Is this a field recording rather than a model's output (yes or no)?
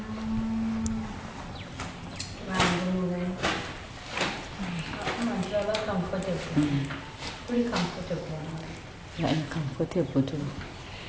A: yes